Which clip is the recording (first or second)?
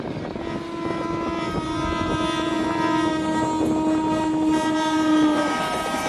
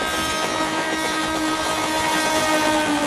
first